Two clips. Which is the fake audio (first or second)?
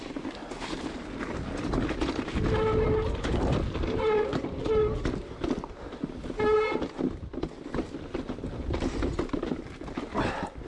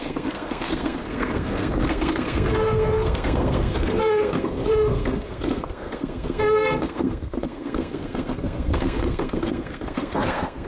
second